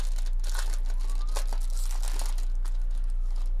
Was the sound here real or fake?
real